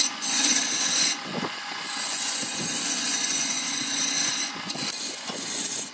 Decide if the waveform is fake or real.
fake